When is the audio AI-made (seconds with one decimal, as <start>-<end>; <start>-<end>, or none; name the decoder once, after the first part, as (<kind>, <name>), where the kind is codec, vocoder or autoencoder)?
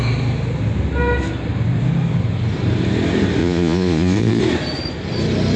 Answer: 3.4-4.4 (vocoder, Vocos)